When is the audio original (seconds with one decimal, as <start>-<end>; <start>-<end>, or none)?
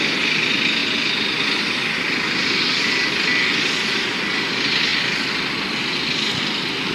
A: 0.0-6.9